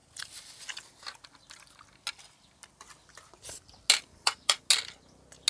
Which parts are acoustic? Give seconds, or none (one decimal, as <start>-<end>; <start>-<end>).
0.0-4.1; 4.6-5.5